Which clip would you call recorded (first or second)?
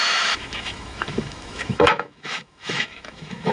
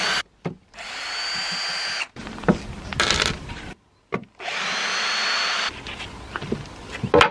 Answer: second